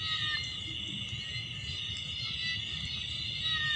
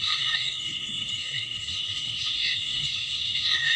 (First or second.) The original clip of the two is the first